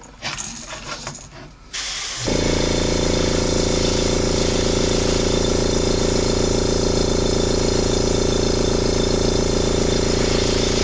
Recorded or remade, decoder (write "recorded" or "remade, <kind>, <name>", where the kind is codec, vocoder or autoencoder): recorded